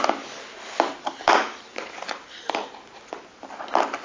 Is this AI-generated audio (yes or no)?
no